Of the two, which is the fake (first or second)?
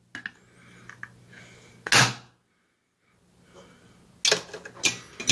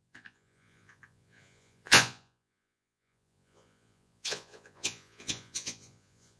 second